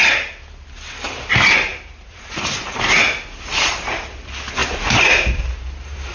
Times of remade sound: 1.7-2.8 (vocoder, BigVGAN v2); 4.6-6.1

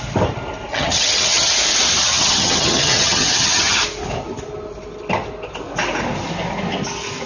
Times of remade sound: 0.7-1.5 (vocoder, HiFi-GAN); 2.0-3.8